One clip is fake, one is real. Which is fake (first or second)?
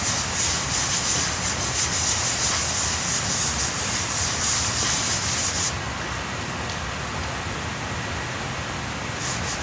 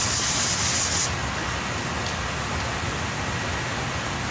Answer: first